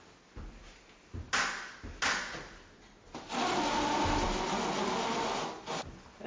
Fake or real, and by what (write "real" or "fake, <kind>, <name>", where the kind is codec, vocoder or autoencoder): real